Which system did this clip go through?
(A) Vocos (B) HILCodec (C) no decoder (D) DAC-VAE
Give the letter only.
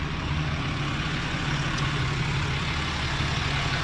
A